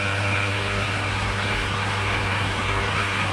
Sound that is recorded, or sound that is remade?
remade